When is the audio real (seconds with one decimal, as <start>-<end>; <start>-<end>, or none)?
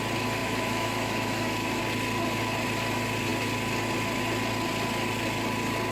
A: 0.0-0.4; 1.8-5.9